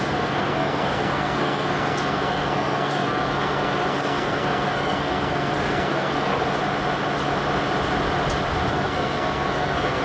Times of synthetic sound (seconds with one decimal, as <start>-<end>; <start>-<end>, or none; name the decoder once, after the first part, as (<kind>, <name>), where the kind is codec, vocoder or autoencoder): 0.0-6.3 (codec, SNAC); 8.7-10.0